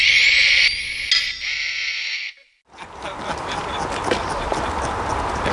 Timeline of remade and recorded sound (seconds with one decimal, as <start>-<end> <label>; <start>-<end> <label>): 0.0-5.5 recorded